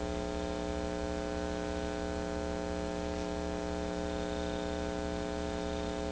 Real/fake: real